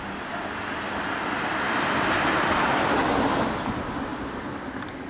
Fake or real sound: real